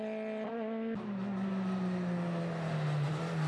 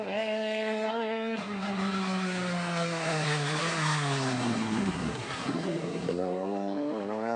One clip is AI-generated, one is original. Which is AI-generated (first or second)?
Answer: second